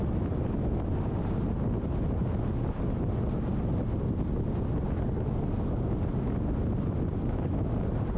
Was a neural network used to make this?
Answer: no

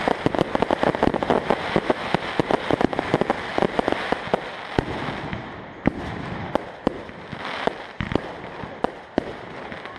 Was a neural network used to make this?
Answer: no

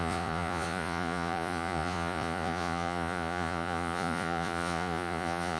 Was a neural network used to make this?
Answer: yes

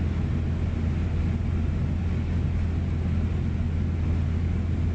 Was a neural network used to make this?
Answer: no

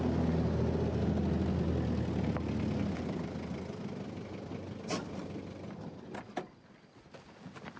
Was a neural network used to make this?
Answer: no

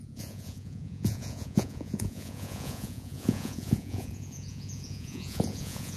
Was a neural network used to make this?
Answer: yes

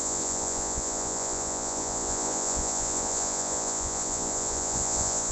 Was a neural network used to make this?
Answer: yes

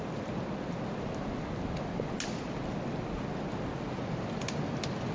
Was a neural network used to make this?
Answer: no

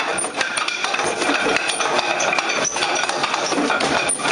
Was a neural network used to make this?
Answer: no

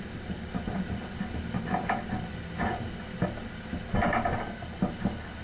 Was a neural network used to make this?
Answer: no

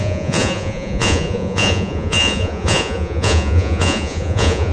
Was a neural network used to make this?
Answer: yes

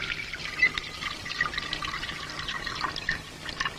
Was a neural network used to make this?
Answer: no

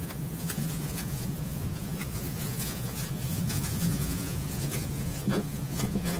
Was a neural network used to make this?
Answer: yes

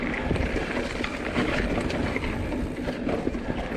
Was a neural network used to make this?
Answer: no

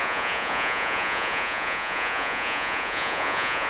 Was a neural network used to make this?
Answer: yes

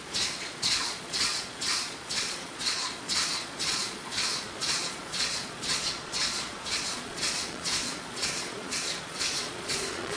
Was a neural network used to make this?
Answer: yes